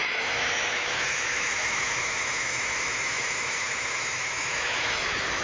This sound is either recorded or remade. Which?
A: remade